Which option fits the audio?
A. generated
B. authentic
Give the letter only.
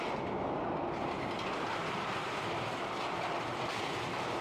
B